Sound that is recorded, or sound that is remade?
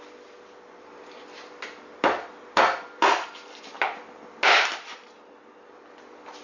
recorded